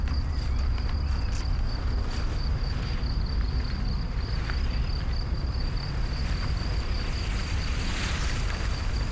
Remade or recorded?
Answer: recorded